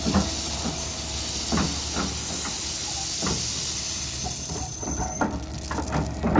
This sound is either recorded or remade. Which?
recorded